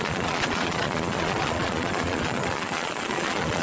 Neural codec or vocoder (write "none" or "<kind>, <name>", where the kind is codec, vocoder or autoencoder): vocoder, Vocos